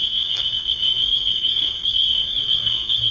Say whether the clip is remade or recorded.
remade